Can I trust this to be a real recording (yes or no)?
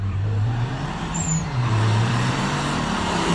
no